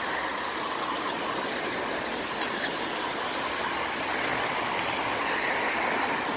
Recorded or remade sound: recorded